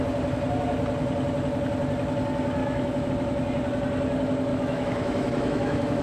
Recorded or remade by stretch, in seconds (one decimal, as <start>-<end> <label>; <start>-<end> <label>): 0.0-2.6 recorded; 2.6-3.1 remade; 3.1-4.5 recorded; 4.5-6.0 remade